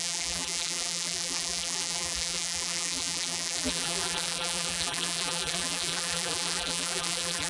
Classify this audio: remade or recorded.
remade